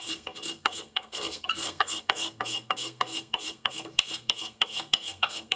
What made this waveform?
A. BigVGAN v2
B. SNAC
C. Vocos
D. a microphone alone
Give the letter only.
B